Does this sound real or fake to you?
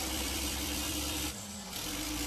fake